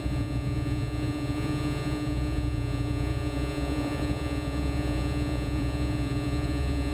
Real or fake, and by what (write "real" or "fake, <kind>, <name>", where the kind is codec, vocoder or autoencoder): fake, vocoder, Vocos